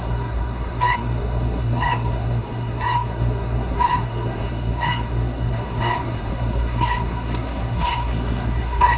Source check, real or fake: fake